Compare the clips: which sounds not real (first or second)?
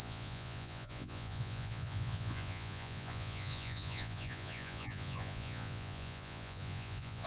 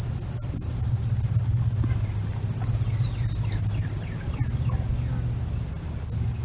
first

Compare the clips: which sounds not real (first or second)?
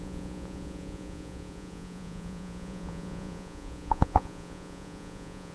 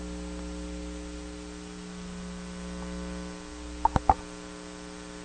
first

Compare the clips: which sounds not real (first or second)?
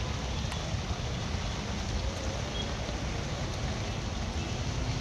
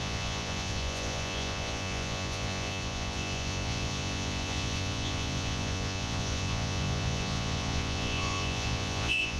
second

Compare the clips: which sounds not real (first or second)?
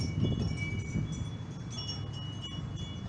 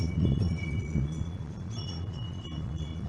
second